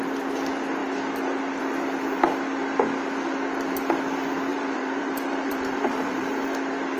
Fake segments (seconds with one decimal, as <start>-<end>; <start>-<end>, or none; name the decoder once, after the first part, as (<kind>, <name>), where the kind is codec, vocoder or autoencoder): 4.5-6.3 (vocoder, BigVGAN v2)